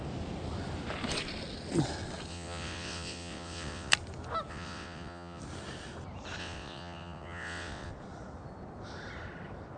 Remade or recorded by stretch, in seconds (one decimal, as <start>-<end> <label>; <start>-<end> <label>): 0.0-2.3 recorded; 2.3-3.9 remade; 3.9-4.5 recorded; 4.5-5.4 remade; 5.4-6.4 recorded; 6.4-7.9 remade; 7.9-9.8 recorded